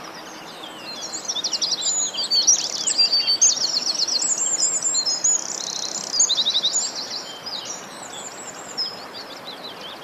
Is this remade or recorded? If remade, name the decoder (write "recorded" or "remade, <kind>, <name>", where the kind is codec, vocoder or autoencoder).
recorded